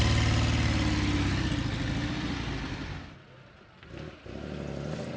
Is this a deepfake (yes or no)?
no